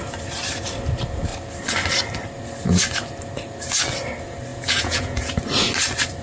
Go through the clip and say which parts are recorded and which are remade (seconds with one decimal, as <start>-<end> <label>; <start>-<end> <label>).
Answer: 0.0-4.5 recorded; 4.5-5.3 remade; 5.3-6.2 recorded